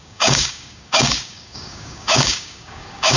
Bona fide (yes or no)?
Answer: no